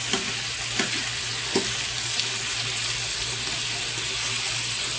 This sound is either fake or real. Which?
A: real